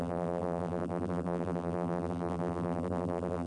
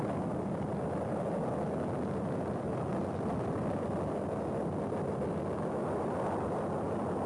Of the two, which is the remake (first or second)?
first